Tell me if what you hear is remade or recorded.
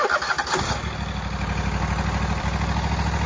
recorded